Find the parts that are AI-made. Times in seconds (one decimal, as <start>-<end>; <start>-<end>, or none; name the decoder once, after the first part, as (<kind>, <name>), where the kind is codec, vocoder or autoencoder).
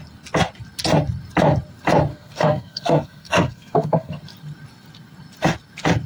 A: 2.1-4.2 (codec, SNAC)